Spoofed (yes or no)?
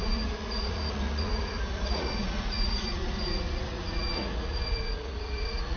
yes